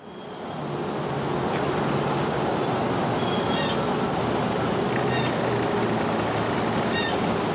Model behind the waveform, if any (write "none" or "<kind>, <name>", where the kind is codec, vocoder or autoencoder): none